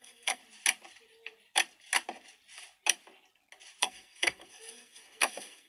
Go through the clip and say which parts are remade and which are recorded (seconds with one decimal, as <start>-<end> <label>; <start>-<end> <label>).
0.0-0.4 remade; 0.4-3.8 recorded; 3.8-5.7 remade